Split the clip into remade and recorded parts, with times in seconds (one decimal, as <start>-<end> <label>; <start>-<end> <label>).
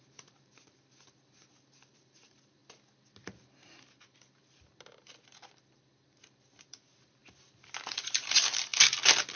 0.0-2.6 remade; 2.6-3.3 recorded; 3.3-7.2 remade; 7.2-7.9 recorded; 7.9-8.7 remade; 8.7-9.4 recorded